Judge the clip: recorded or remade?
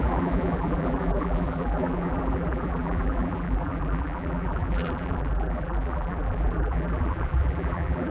remade